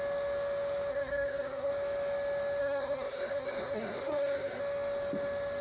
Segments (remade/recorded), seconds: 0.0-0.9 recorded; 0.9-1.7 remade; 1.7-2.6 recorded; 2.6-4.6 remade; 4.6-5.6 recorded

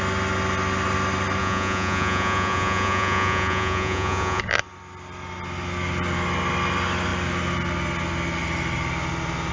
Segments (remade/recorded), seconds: 0.0-1.4 recorded; 1.4-4.4 remade; 4.4-9.5 recorded

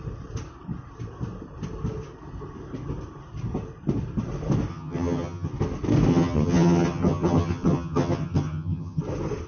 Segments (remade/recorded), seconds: 0.0-4.7 recorded; 4.7-5.5 remade; 5.5-6.1 recorded; 6.1-9.0 remade; 9.0-9.5 recorded